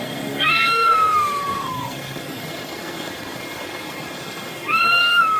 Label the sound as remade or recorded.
remade